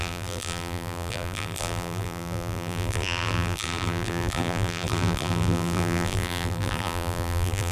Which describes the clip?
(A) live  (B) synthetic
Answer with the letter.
B